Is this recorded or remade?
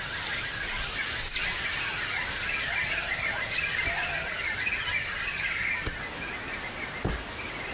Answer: recorded